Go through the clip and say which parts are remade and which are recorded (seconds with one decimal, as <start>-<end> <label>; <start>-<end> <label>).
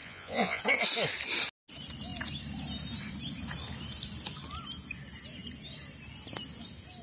0.0-0.6 remade; 0.6-7.0 recorded